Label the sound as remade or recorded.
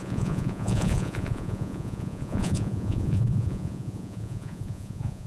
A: remade